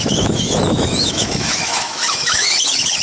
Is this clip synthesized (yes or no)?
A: yes